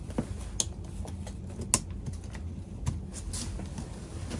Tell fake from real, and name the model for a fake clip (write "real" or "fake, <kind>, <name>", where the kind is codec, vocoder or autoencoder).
real